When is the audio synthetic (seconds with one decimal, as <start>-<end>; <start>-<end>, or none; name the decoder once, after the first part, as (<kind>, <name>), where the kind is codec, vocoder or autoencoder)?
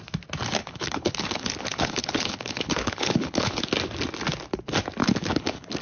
0.6-3.6 (codec, HILCodec); 5.0-5.8